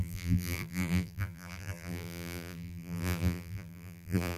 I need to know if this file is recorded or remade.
remade